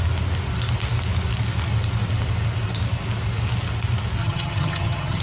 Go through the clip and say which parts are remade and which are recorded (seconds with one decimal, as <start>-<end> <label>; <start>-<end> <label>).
0.0-4.2 recorded; 4.2-5.2 remade